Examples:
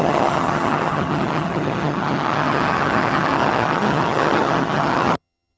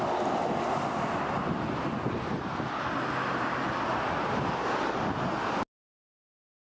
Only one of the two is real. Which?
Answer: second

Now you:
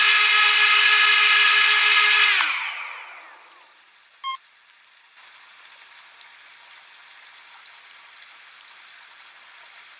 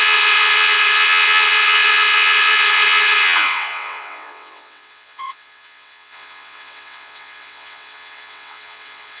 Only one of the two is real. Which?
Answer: first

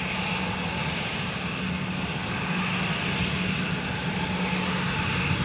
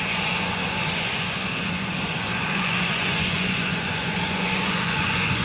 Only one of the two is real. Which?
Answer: first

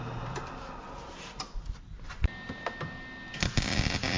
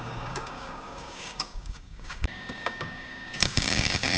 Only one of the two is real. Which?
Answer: first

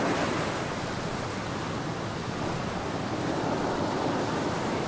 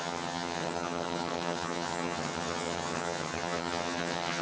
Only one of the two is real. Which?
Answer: first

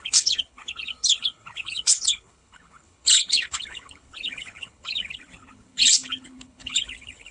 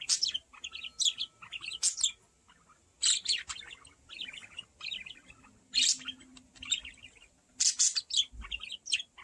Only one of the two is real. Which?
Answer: second